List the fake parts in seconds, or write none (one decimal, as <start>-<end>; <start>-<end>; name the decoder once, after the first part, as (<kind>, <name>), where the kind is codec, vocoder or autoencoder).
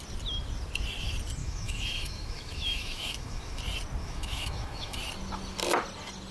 1.4-3.6 (autoencoder, DAC-VAE); 4.0-5.0